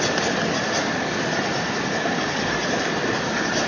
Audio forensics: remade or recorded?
recorded